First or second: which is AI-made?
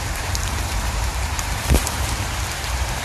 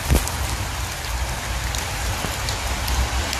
first